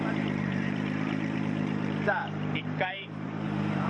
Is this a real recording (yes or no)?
no